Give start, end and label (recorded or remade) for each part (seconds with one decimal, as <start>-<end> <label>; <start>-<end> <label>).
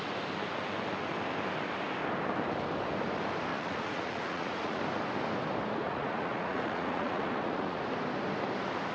0.0-3.5 recorded; 3.5-4.8 remade; 4.8-5.8 recorded; 5.8-7.8 remade; 7.8-8.9 recorded